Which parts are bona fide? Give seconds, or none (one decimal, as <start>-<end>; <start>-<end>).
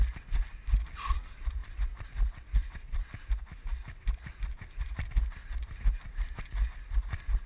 0.0-7.5